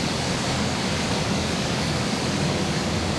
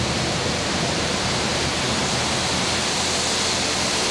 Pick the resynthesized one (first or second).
first